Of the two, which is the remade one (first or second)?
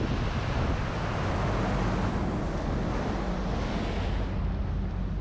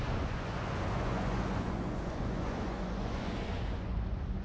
second